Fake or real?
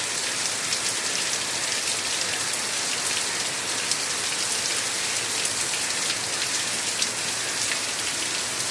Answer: real